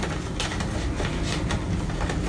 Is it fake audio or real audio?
real